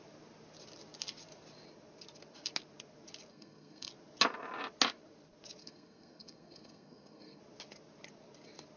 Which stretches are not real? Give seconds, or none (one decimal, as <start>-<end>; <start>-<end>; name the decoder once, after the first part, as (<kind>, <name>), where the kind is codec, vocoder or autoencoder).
3.3-3.9 (codec, SNAC); 5.6-7.4